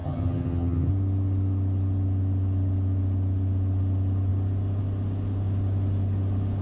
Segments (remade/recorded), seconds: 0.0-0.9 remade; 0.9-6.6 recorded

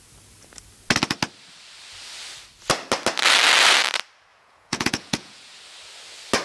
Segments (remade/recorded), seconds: 0.0-4.3 recorded; 4.3-5.6 remade; 5.6-6.4 recorded

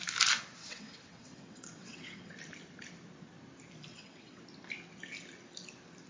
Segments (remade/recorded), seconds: 0.0-0.6 recorded; 0.6-2.3 remade; 2.3-3.9 recorded; 3.9-4.4 remade; 4.4-6.1 recorded

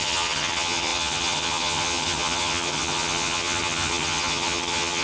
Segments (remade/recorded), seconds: 0.0-5.0 remade

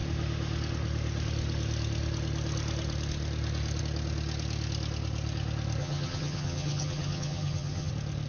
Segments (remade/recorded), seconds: 0.0-5.8 recorded; 5.8-7.9 remade; 7.9-8.3 recorded